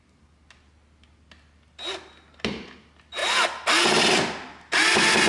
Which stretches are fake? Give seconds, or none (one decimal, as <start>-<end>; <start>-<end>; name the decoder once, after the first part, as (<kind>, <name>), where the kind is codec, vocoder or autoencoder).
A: none

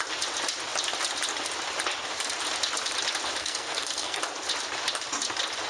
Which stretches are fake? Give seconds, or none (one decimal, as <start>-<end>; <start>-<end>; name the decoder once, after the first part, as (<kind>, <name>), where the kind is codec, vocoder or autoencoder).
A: 3.4-4.2 (codec, SNAC)

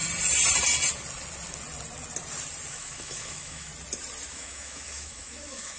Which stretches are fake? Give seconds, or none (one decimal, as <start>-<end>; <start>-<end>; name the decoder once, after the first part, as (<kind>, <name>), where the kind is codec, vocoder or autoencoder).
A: 2.7-3.7 (autoencoder, DAC-VAE); 4.3-5.8

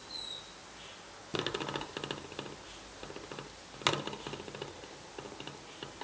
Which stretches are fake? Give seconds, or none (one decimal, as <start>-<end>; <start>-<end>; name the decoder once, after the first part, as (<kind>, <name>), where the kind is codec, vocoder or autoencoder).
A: none

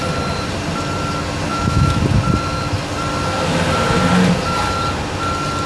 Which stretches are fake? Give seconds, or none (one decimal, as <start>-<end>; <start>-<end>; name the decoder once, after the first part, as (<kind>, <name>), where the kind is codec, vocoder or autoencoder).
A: 1.5-2.0 (autoencoder, DAC-VAE)

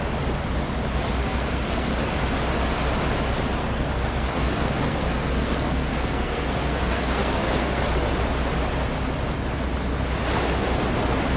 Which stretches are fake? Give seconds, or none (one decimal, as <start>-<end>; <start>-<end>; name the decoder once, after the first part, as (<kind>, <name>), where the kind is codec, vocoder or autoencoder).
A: 1.2-1.9 (codec, SNAC); 3.6-7.9